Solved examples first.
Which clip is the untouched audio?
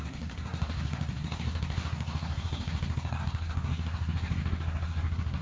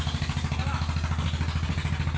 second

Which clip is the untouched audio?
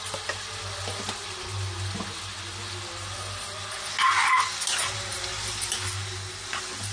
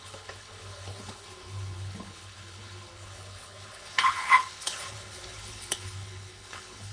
first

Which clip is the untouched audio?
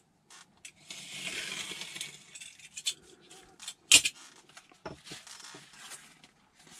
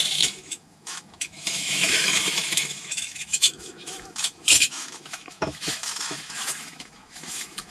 first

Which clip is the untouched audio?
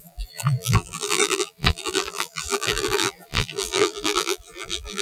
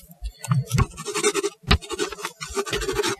second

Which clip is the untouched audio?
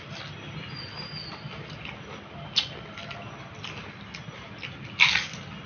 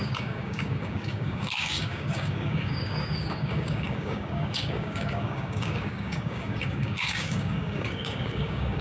first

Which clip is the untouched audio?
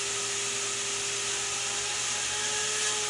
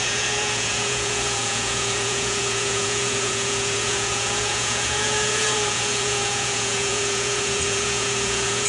first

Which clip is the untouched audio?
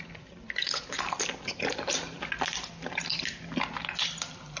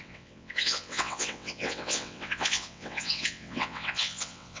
first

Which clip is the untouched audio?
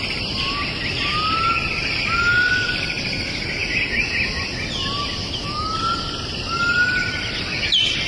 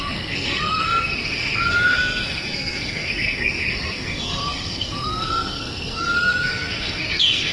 first